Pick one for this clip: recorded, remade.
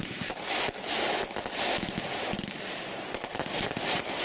recorded